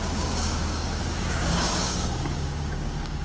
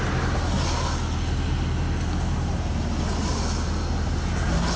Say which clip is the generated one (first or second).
first